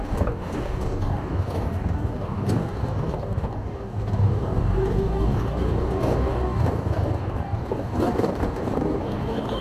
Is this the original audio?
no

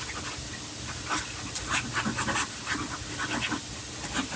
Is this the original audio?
yes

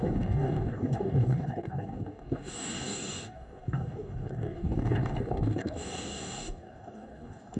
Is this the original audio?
no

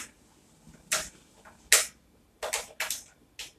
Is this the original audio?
yes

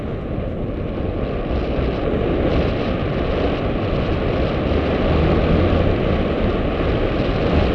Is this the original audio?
yes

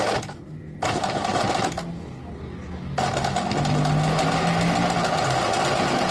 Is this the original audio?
yes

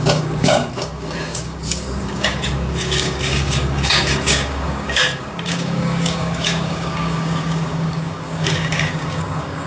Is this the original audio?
no